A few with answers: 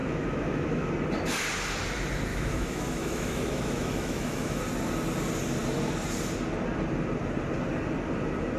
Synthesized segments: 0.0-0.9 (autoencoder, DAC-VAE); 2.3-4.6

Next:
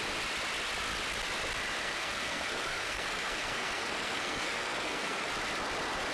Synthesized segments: 1.8-5.3 (codec, SNAC)

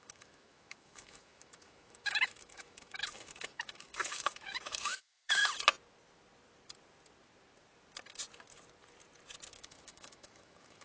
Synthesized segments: 0.0-5.4 (autoencoder, DAC-VAE); 9.5-10.8

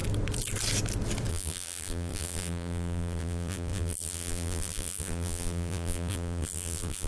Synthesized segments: 1.3-7.1 (vocoder, BigVGAN v2)

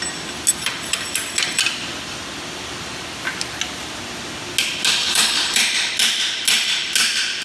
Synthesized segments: 5.0-5.6 (codec, DAC)